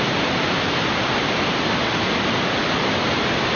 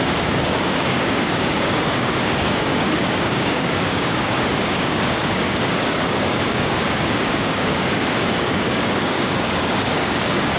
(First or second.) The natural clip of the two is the first